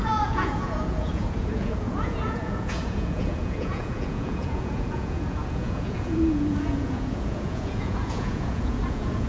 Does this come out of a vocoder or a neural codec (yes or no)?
yes